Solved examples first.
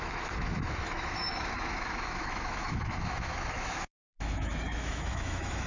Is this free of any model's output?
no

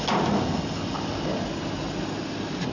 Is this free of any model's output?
yes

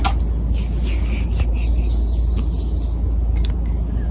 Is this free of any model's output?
yes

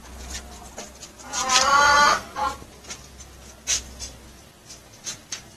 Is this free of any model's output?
yes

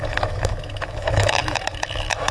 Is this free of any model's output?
no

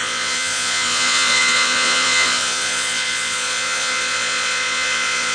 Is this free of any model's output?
no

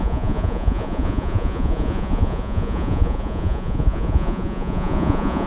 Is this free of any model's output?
no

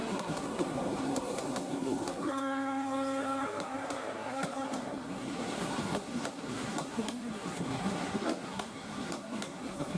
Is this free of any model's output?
no